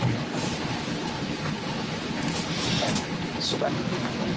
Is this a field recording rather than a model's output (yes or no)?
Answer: yes